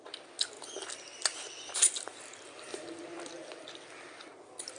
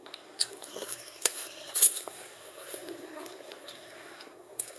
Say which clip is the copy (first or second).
second